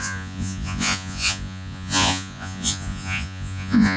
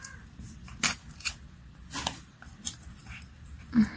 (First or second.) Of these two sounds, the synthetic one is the first